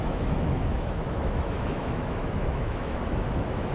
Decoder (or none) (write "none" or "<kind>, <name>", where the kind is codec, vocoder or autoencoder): autoencoder, DAC-VAE